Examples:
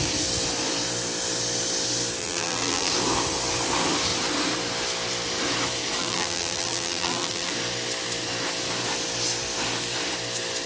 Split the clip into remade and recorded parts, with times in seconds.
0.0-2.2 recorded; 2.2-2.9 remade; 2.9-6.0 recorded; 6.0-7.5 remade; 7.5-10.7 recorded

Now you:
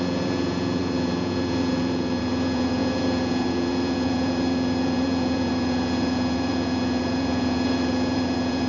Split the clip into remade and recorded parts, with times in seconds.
0.0-8.7 remade

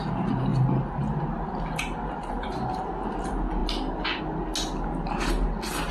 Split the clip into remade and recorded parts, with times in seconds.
0.0-5.9 recorded

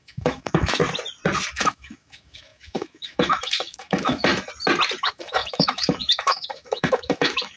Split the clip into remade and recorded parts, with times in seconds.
0.0-0.8 remade; 0.8-1.5 recorded; 1.5-4.3 remade; 4.3-5.0 recorded; 5.0-7.6 remade